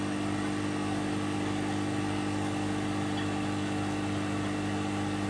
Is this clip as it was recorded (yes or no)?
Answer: yes